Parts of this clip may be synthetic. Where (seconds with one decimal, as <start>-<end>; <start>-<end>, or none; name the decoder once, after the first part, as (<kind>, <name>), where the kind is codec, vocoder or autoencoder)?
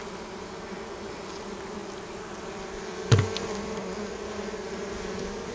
none